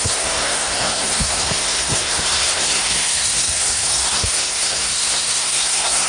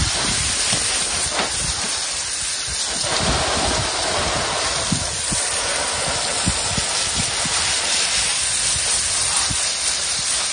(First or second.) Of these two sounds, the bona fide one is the second